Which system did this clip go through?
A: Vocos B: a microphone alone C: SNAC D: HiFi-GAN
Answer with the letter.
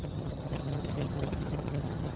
D